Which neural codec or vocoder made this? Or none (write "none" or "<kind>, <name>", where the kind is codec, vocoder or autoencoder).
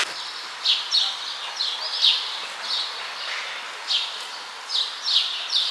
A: none